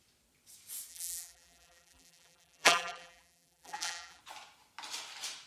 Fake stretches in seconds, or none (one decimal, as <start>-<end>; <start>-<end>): 0.9-4.2